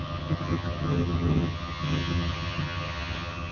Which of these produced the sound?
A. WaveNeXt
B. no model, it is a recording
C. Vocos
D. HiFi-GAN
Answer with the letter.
D